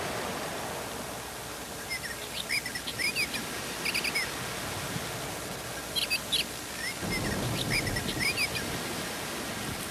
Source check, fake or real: real